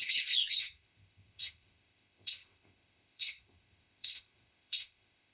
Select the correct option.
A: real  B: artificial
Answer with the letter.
B